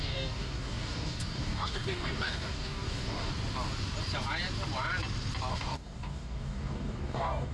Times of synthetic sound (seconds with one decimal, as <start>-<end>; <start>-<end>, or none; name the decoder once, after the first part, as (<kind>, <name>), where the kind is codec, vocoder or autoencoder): 0.0-3.3 (codec, DAC); 5.5-7.5